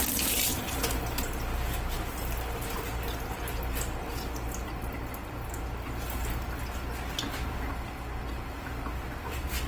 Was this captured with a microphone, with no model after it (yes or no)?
yes